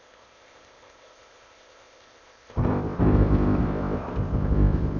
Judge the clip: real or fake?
fake